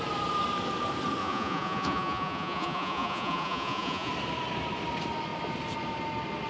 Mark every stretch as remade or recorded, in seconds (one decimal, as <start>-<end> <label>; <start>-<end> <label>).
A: 0.0-1.2 recorded; 1.2-4.1 remade; 4.1-6.5 recorded